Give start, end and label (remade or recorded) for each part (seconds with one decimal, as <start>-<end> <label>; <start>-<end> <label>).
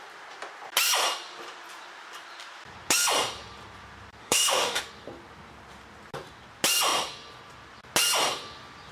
0.0-4.2 recorded; 4.2-4.8 remade; 4.8-8.9 recorded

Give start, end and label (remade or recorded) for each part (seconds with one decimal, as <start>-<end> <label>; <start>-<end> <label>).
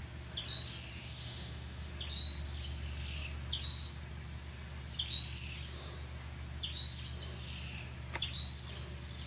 0.0-0.9 recorded; 0.9-1.9 remade; 1.9-9.3 recorded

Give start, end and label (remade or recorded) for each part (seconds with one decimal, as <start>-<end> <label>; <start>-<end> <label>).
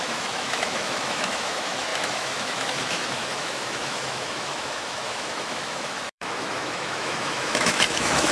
0.0-8.3 remade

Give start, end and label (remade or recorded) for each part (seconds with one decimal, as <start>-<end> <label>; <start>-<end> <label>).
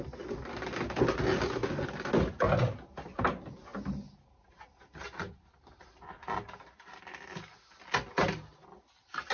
0.0-9.3 recorded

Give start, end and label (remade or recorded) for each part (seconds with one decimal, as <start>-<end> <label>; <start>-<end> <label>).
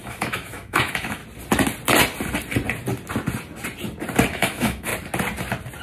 0.0-1.2 remade; 1.2-4.3 recorded; 4.3-4.9 remade; 4.9-5.8 recorded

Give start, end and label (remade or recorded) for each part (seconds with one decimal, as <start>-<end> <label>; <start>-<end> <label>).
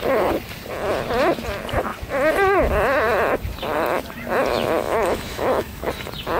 0.0-4.5 recorded; 4.5-5.9 remade; 5.9-6.4 recorded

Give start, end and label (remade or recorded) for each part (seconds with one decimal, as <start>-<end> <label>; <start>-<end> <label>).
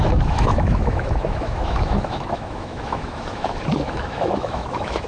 0.0-5.1 remade